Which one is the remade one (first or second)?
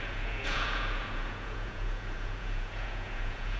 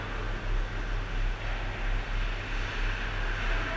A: first